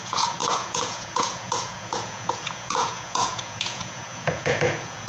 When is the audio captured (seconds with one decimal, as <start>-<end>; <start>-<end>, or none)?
none